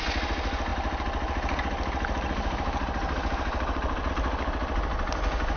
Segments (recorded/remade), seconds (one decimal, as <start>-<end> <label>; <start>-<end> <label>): 0.0-5.6 recorded